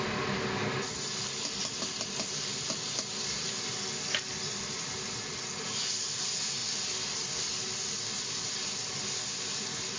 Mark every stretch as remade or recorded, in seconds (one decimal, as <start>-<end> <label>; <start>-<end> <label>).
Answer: 0.0-10.0 recorded